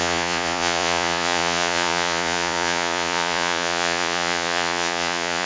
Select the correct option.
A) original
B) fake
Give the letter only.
B